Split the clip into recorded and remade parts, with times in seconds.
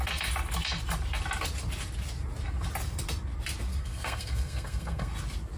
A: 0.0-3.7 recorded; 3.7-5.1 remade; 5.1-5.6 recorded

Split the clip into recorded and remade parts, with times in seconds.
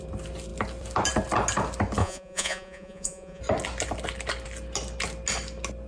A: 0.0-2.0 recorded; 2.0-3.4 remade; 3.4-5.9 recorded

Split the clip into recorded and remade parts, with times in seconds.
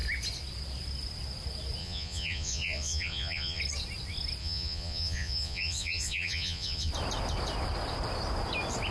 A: 0.0-1.8 recorded; 1.8-3.6 remade; 3.6-4.4 recorded; 4.4-6.9 remade; 6.9-8.9 recorded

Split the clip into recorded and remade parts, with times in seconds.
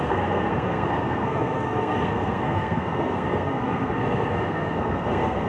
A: 0.0-5.5 remade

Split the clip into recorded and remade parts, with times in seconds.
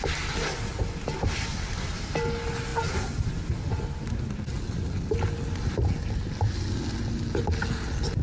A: 0.0-8.2 recorded